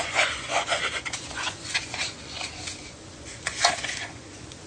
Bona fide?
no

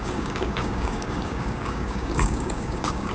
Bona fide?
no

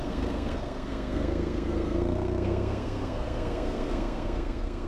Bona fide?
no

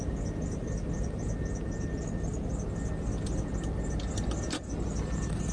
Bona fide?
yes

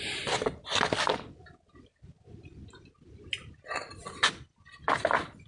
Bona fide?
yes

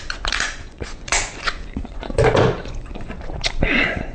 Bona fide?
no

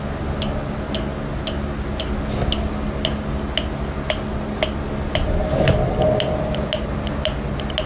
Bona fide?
yes